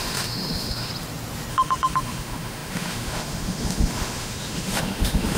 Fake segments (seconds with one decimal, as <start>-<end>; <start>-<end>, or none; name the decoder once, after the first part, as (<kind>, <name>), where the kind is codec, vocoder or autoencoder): 0.0-0.9 (autoencoder, DAC-VAE); 1.5-5.4